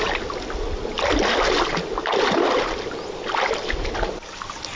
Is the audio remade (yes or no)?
no